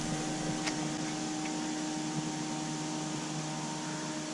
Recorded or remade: recorded